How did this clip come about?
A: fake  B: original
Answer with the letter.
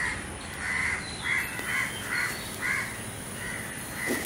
B